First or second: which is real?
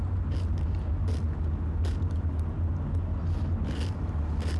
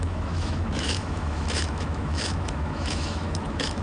first